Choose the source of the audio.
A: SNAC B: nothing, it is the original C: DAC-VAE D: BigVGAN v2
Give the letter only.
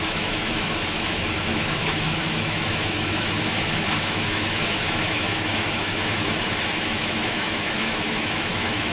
C